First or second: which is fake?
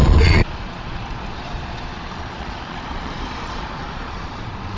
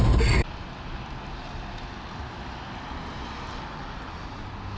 first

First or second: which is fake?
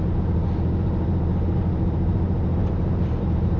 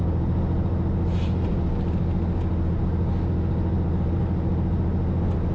first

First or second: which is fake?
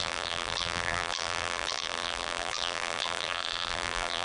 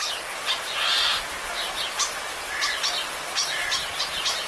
first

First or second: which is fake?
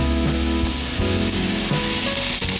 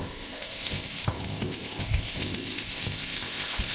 second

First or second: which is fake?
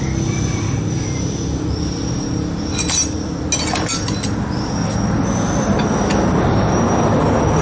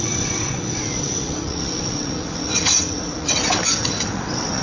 second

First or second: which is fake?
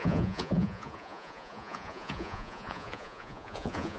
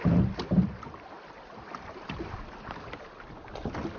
first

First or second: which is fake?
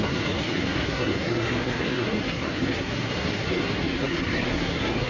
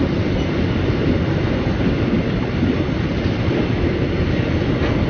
first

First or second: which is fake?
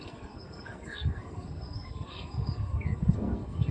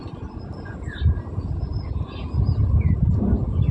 first